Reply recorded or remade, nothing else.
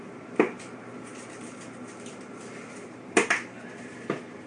recorded